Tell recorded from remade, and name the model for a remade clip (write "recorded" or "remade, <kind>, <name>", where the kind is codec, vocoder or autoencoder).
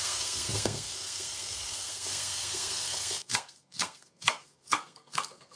remade, codec, SNAC